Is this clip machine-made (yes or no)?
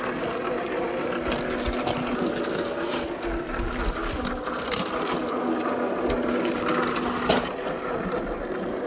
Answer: no